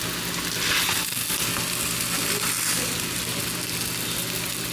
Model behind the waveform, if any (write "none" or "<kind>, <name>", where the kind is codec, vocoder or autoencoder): none